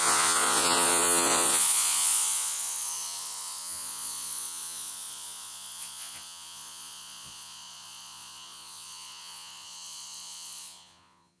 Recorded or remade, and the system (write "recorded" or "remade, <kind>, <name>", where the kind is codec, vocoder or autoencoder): remade, vocoder, Vocos